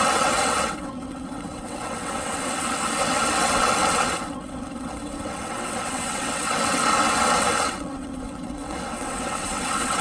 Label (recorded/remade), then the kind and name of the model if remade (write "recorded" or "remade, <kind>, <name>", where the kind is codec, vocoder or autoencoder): remade, vocoder, WaveNeXt